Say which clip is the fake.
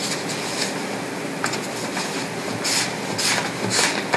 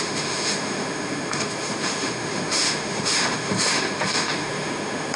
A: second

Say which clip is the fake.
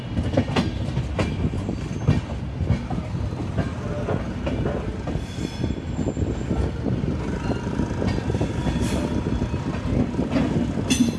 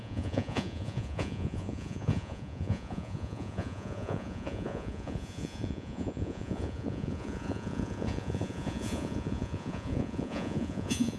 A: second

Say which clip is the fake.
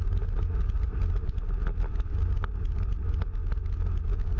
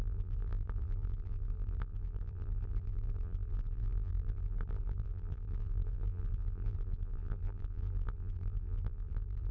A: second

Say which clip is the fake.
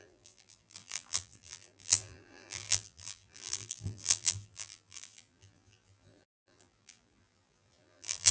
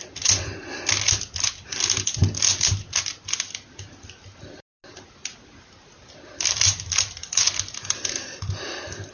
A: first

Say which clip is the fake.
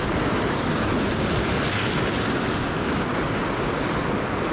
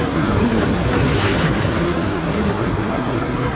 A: second